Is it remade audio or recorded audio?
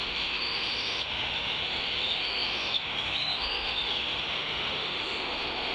remade